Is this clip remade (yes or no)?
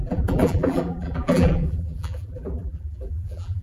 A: yes